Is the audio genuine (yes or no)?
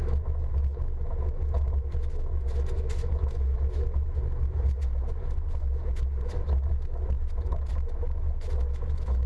no